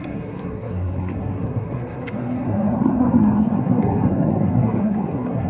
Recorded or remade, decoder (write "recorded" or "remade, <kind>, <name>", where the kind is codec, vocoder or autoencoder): remade, codec, SNAC